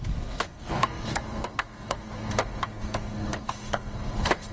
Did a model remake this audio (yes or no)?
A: yes